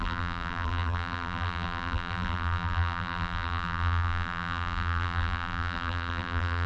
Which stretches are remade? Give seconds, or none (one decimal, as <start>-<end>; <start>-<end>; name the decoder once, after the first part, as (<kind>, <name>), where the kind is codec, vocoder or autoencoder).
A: 0.0-6.7 (vocoder, BigVGAN v2)